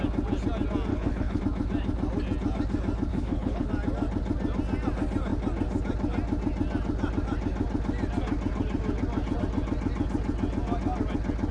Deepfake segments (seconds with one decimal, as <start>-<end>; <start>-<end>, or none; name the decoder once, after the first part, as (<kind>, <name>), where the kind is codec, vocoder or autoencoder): 0.9-1.4 (codec, HILCodec); 3.1-3.7